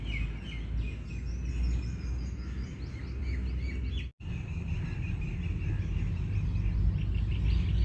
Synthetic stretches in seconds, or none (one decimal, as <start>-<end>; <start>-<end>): none